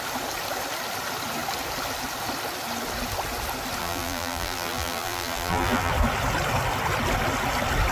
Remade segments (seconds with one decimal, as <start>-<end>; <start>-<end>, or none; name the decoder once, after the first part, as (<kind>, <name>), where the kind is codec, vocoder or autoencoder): 3.8-5.9 (vocoder, BigVGAN v2)